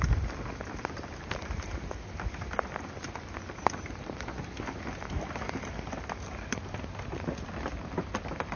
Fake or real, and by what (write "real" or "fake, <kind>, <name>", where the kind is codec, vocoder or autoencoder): real